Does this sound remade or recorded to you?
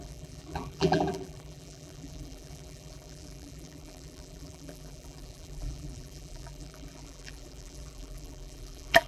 remade